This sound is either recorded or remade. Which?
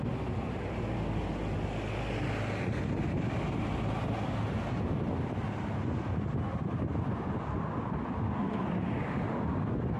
recorded